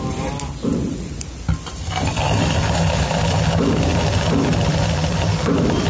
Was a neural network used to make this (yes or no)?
no